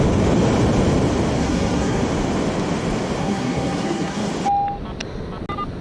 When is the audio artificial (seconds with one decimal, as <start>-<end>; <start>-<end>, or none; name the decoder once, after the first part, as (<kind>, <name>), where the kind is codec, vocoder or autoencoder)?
1.4-2.0 (codec, SNAC); 3.2-4.3